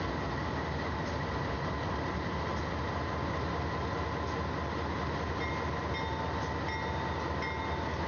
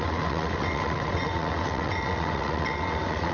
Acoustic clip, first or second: first